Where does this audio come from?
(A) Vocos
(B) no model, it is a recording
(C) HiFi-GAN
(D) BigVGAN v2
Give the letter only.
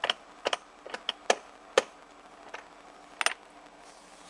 B